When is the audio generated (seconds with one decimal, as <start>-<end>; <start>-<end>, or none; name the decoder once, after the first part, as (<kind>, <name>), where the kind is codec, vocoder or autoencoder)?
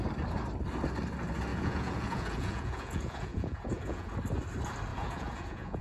1.5-4.1 (vocoder, Vocos); 4.9-5.8